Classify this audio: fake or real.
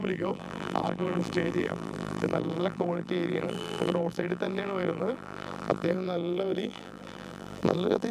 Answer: fake